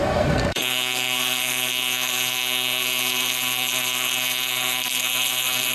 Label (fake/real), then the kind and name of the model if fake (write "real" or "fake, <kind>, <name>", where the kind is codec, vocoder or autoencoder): fake, codec, SNAC